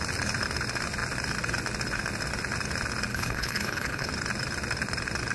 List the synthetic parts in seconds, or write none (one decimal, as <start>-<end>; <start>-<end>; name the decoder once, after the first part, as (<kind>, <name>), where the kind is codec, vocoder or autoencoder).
3.1-4.1 (codec, HILCodec)